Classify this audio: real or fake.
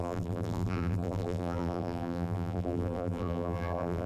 fake